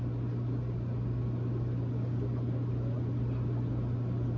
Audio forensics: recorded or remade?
recorded